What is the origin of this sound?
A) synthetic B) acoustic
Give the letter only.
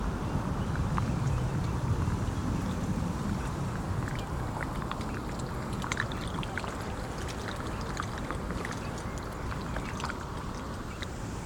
B